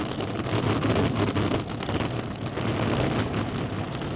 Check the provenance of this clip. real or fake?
real